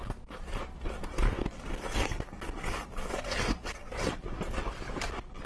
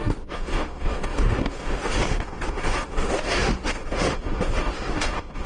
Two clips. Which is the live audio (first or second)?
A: first